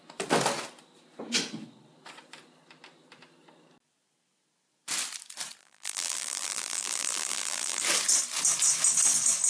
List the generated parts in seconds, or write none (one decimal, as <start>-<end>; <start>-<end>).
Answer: 5.6-7.8